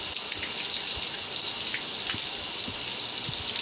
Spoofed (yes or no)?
no